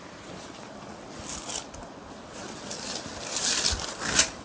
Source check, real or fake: real